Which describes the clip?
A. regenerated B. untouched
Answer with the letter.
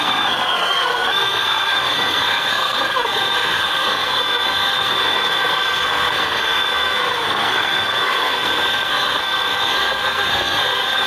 A